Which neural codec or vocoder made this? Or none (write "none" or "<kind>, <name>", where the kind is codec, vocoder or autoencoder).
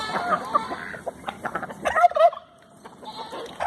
none